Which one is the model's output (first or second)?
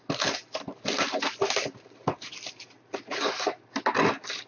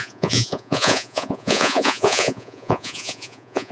second